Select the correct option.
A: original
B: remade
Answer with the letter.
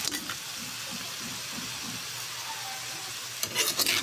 A